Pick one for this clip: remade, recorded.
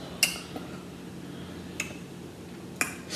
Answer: recorded